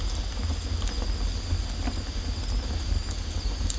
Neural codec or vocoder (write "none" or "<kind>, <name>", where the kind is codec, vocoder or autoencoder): none